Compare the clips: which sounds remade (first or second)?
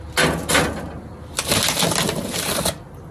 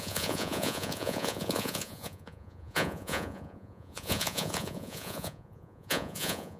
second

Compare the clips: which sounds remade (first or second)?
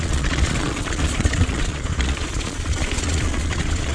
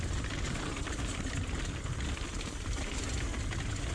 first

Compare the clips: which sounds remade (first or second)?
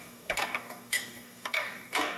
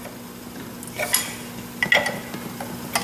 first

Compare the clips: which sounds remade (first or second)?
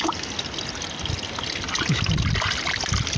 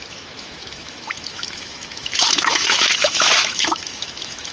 second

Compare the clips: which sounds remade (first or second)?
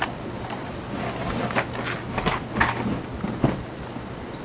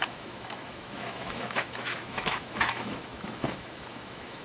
second